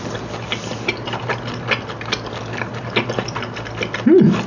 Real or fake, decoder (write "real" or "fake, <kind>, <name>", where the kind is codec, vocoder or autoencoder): real